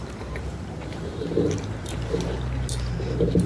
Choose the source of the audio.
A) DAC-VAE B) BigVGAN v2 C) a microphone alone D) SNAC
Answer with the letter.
B